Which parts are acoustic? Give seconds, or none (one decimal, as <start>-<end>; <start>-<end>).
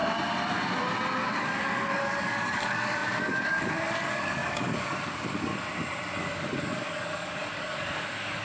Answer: 0.0-1.2; 5.5-6.2